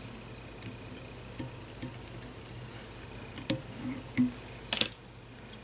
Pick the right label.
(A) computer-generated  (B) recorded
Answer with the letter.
B